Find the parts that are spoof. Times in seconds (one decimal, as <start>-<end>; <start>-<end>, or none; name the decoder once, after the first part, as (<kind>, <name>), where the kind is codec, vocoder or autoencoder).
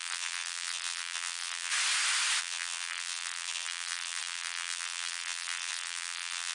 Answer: 0.0-1.7 (vocoder, BigVGAN v2); 2.4-6.5